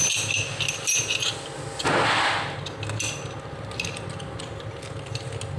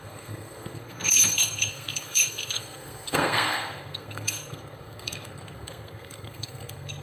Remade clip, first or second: second